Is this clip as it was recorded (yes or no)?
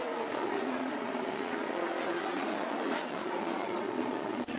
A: no